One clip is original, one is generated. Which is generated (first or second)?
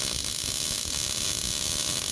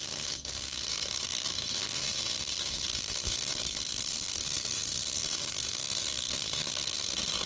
second